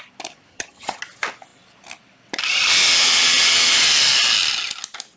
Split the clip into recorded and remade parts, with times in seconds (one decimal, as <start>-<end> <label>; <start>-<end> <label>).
0.0-0.5 recorded; 0.5-1.0 remade; 1.0-5.2 recorded